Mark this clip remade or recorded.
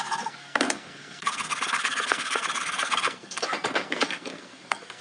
remade